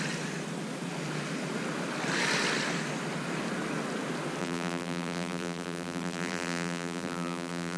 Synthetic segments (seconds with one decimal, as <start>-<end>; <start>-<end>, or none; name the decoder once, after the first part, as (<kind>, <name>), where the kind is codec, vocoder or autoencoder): 4.4-7.8 (vocoder, BigVGAN v2)